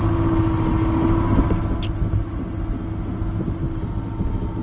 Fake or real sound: real